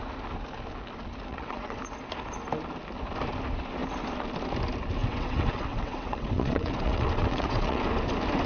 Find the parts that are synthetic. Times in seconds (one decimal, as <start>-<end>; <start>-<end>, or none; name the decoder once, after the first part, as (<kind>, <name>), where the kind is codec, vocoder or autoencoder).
1.3-1.8 (vocoder, WaveNeXt); 5.0-7.8